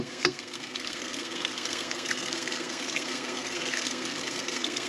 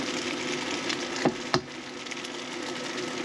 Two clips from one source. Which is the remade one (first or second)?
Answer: first